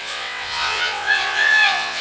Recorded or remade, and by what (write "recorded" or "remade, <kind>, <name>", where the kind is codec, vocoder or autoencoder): remade, vocoder, WaveNeXt